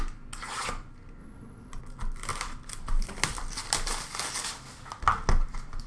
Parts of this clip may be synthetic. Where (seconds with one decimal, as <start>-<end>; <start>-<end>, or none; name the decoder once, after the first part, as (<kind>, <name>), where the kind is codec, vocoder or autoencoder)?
1.2-1.8 (vocoder, Vocos)